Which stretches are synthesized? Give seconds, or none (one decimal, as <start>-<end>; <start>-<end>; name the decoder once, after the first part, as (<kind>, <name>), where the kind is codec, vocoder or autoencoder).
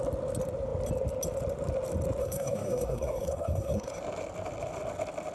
2.2-4.0 (codec, SNAC)